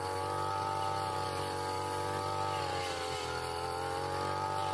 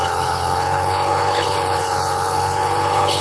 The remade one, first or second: second